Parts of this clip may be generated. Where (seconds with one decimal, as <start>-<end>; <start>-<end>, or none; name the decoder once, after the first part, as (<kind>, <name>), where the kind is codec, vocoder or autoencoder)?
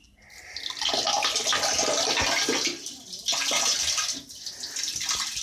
none